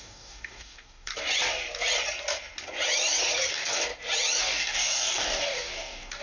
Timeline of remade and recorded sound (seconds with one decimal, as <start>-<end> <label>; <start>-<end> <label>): 0.0-1.1 remade; 1.1-3.5 recorded; 3.5-3.9 remade; 3.9-4.4 recorded; 4.4-6.2 remade